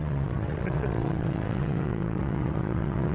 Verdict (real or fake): fake